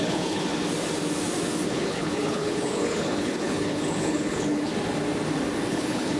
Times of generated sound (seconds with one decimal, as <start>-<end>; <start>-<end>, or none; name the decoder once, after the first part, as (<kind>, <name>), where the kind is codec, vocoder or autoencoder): 0.0-0.5 (codec, HILCodec); 1.7-4.7; 5.7-6.2